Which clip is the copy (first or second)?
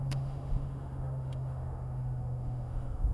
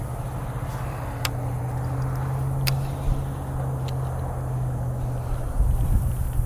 first